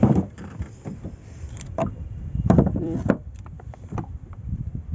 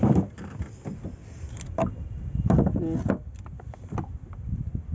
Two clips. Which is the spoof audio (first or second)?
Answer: first